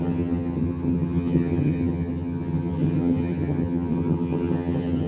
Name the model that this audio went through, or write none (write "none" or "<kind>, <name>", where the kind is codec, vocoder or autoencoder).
vocoder, HiFi-GAN